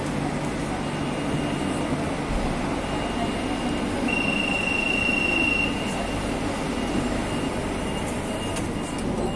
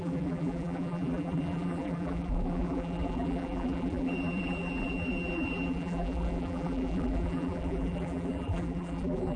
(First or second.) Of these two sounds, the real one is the first